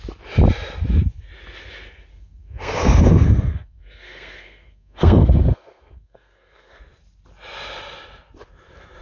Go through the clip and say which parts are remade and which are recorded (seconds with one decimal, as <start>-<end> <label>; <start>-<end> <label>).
0.0-2.1 recorded; 2.1-6.8 remade; 6.8-9.0 recorded